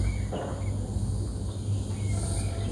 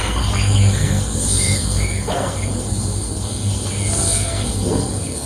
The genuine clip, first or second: first